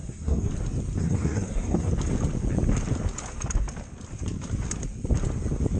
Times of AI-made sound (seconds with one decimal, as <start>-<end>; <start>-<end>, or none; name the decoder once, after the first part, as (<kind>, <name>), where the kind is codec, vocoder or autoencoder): 0.0-0.5 (codec, SNAC); 1.0-1.9